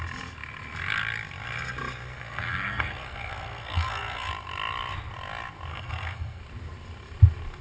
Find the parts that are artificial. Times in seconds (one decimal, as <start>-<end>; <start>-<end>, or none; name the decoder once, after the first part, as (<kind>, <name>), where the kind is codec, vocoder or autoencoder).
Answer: 2.1-4.3 (codec, SNAC); 5.7-6.4